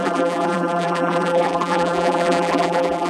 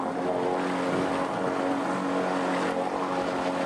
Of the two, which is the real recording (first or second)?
second